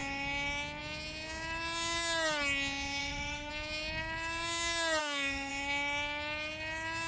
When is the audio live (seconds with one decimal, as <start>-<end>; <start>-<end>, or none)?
0.0-3.0; 3.5-5.0; 5.5-7.1